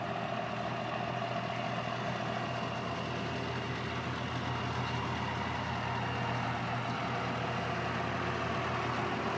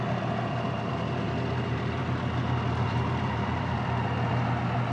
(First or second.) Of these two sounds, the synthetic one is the second